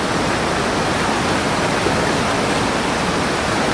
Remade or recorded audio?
recorded